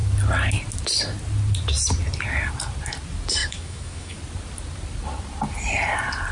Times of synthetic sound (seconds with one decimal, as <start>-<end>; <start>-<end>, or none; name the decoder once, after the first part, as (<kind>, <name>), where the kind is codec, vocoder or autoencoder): 3.4-4.2 (autoencoder, DAC-VAE)